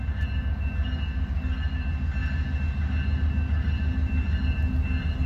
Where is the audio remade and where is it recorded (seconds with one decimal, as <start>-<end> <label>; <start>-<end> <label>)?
0.0-5.3 recorded